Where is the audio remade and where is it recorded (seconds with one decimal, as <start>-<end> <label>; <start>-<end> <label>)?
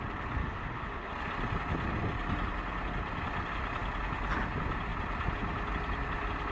0.0-0.4 recorded; 0.4-1.1 remade; 1.1-6.5 recorded